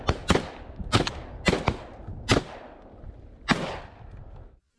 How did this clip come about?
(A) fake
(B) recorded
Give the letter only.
B